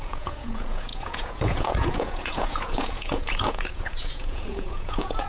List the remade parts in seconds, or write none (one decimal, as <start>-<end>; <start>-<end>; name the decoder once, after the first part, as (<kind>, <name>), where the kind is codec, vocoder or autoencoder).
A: 0.0-5.3 (vocoder, Vocos)